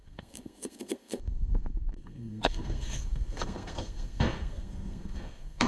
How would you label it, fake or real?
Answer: fake